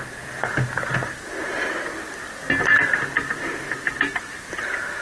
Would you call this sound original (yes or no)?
yes